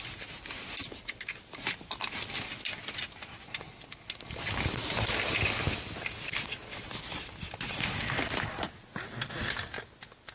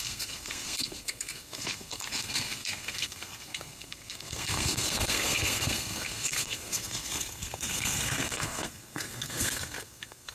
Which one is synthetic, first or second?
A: second